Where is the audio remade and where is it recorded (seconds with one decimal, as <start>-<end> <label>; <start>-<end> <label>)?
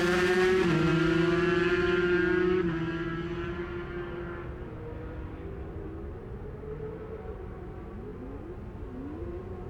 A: 0.0-9.7 recorded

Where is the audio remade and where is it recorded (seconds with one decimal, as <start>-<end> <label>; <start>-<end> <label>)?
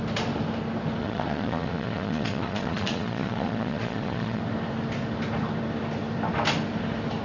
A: 0.0-1.0 recorded; 1.0-4.4 remade; 4.4-7.2 recorded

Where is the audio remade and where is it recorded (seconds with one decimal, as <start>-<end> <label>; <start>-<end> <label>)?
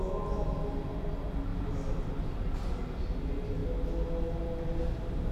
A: 0.0-5.3 recorded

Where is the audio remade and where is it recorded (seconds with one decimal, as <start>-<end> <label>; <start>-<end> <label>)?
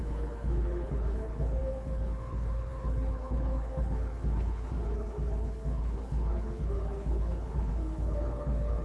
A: 0.0-8.8 remade